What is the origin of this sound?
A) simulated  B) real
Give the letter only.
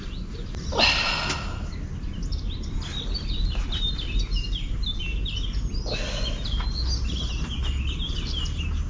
B